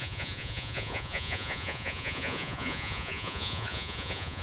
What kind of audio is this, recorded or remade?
remade